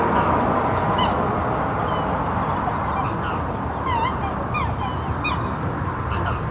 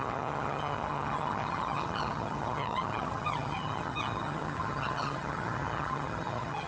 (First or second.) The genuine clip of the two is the first